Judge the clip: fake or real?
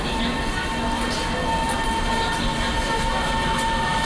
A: real